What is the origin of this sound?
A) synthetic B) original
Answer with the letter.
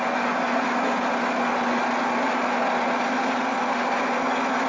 B